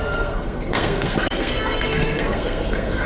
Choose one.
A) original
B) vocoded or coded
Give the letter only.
B